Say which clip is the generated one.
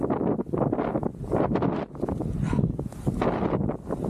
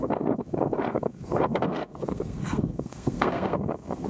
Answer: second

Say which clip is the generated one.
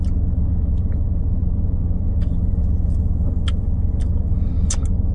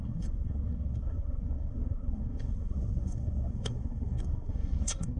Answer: second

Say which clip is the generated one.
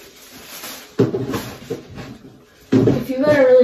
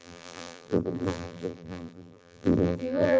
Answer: second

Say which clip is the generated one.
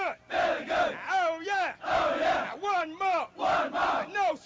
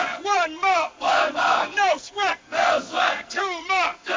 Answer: second